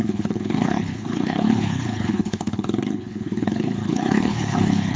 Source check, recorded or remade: remade